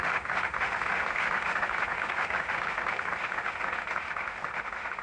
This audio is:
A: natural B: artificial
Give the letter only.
B